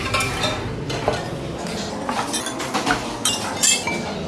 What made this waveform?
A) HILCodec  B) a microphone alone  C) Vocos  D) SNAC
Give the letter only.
B